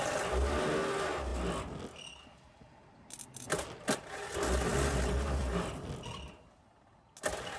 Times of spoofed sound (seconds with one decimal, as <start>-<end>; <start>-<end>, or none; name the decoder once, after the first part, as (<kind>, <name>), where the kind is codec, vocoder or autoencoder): none